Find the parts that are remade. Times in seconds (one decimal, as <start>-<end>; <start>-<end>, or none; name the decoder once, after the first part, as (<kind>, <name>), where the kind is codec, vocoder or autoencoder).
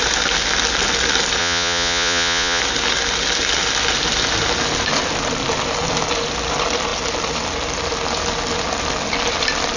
1.4-2.6 (vocoder, Vocos)